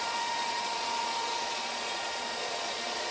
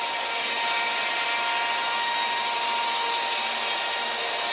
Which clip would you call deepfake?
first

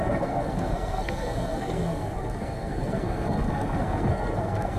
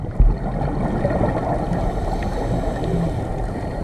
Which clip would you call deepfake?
first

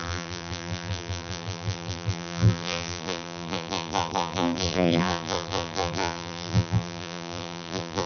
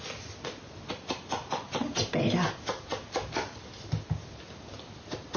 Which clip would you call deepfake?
first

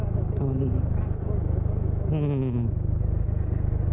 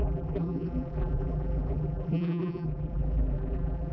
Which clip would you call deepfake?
second